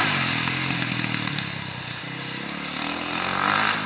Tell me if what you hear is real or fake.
real